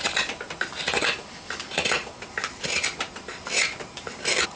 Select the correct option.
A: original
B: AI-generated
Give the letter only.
A